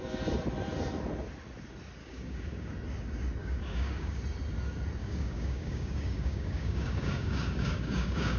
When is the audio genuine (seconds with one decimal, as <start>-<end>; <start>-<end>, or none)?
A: 0.0-2.0; 2.7-3.4; 4.2-5.0